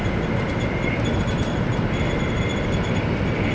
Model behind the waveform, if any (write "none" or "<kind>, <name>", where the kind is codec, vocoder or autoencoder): none